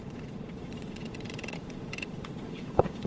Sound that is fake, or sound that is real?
fake